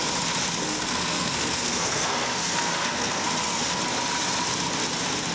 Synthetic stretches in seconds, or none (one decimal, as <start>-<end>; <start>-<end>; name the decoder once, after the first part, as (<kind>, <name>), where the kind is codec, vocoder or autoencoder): 0.6-3.8 (codec, SNAC)